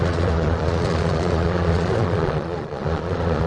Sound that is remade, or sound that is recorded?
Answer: remade